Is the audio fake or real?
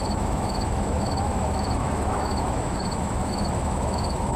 fake